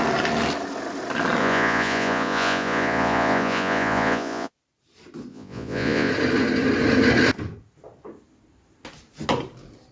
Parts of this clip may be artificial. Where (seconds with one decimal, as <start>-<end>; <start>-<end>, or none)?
1.4-4.5; 5.3-6.1